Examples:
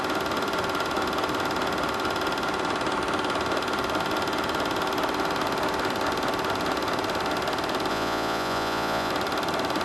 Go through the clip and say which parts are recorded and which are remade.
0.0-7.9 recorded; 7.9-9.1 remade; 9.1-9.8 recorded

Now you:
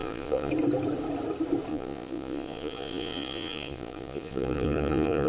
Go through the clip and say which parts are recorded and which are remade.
0.0-0.5 remade; 0.5-1.7 recorded; 1.7-5.3 remade

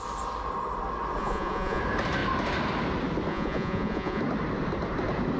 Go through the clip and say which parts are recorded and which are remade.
0.0-1.2 recorded; 1.2-1.8 remade; 1.8-3.3 recorded; 3.3-4.2 remade; 4.2-5.4 recorded

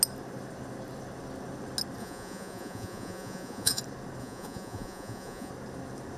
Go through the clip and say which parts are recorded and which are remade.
0.0-2.0 recorded; 2.0-3.8 remade; 3.8-4.2 recorded; 4.2-5.5 remade; 5.5-6.2 recorded

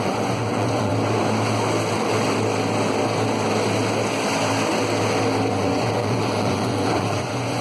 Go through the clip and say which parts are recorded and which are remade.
0.0-0.9 remade; 0.9-5.5 recorded; 5.5-7.6 remade

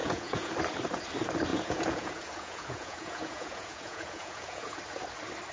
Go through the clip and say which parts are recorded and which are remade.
0.0-0.5 remade; 0.5-1.5 recorded; 1.5-4.8 remade; 4.8-5.5 recorded

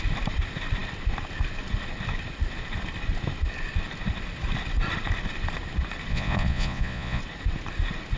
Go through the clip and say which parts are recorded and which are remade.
0.0-6.1 recorded; 6.1-7.2 remade; 7.2-8.2 recorded

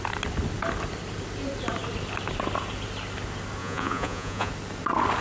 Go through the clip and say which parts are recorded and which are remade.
0.0-3.6 recorded; 3.6-4.5 remade; 4.5-5.2 recorded